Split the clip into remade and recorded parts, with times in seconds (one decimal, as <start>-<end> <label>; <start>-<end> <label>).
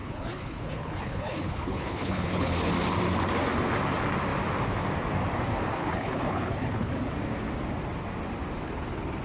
0.0-2.7 remade; 2.7-5.8 recorded; 5.8-6.9 remade; 6.9-9.2 recorded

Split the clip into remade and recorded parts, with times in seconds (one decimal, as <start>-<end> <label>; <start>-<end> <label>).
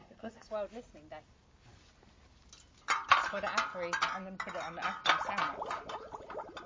0.0-0.5 remade; 0.5-6.7 recorded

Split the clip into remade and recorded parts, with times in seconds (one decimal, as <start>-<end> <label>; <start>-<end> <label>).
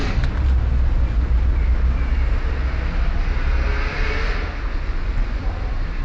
0.0-4.7 recorded; 4.7-5.4 remade; 5.4-6.0 recorded